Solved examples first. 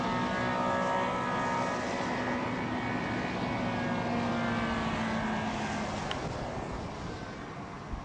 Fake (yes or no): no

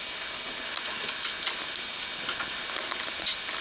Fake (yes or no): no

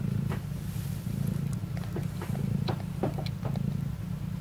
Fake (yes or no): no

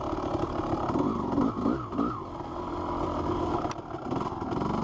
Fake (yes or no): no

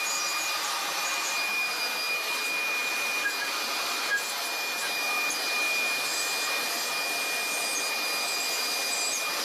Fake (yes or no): no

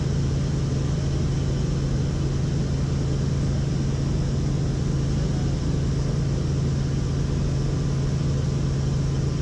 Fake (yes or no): no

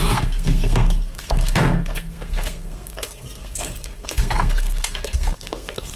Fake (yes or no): yes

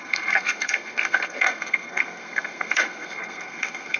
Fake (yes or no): yes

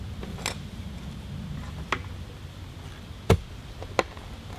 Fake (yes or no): no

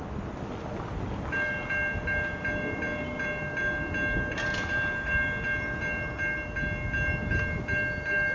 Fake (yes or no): no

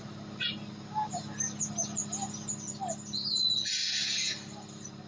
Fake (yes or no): no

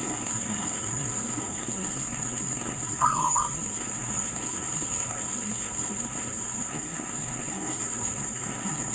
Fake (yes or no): yes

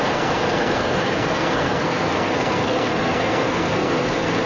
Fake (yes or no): yes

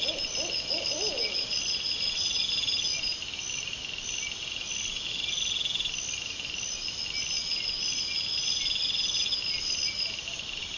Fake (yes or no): no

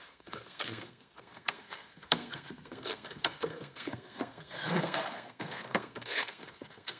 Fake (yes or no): yes